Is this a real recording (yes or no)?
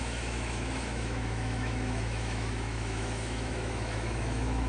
no